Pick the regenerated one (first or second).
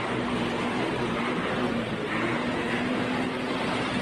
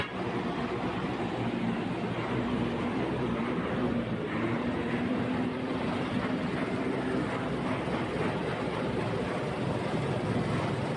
second